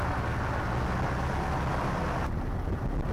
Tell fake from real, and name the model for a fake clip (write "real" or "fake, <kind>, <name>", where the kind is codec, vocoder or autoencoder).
real